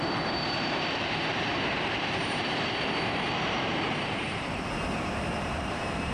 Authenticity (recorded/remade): remade